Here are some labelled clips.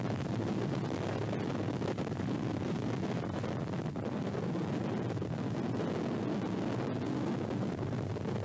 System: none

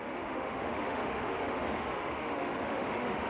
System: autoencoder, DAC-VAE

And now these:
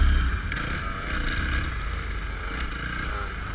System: none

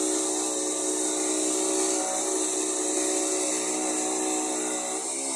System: none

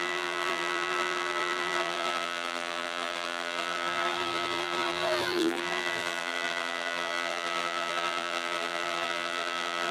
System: vocoder, BigVGAN v2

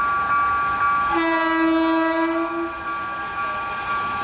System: none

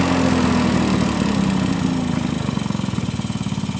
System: none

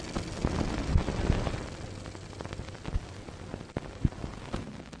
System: none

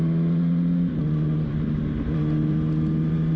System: none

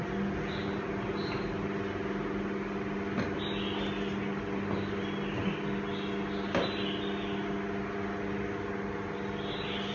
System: none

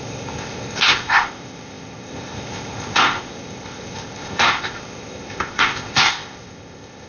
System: codec, ZipCodec